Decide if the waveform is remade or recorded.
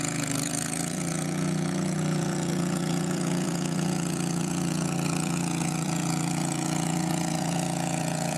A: remade